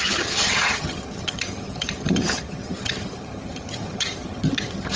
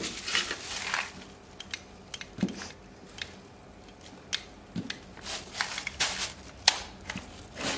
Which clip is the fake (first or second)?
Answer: first